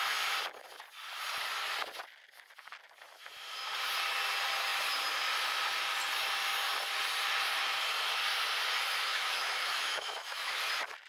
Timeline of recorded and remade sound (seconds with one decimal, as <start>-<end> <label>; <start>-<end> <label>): 0.0-9.1 recorded; 9.1-10.6 remade; 10.6-11.1 recorded